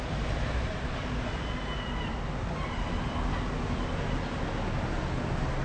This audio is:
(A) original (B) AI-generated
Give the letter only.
A